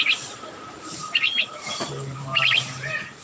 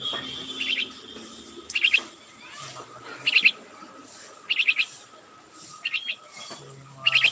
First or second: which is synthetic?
first